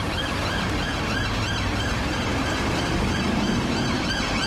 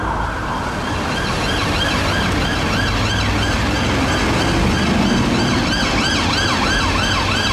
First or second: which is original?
second